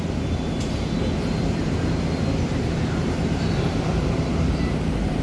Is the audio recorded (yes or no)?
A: no